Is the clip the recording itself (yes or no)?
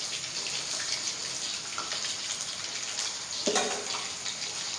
yes